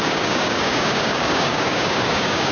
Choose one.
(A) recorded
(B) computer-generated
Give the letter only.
B